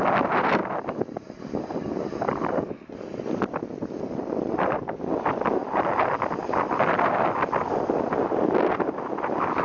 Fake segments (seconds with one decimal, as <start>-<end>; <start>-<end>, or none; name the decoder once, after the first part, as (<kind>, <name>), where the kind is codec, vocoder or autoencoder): none